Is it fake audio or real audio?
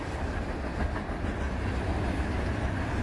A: real